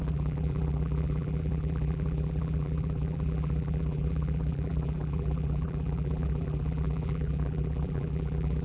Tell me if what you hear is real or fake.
fake